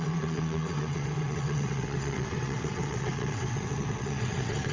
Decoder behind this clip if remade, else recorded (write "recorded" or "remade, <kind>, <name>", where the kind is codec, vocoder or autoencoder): remade, vocoder, WaveNeXt